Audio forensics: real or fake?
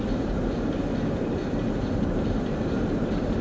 fake